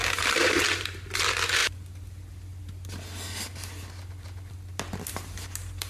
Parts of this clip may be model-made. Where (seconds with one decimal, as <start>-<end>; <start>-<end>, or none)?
none